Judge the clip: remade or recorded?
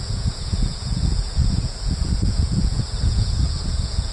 remade